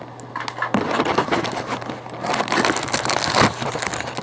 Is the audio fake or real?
real